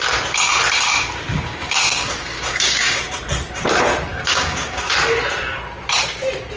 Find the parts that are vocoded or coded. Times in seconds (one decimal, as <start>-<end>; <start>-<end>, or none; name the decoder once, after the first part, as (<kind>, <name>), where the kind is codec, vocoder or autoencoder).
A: 1.3-3.2 (codec, DAC); 4.1-4.9